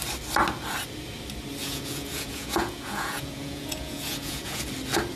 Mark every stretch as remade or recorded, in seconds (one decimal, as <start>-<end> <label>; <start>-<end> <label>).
0.0-1.6 recorded; 1.6-4.7 remade; 4.7-5.2 recorded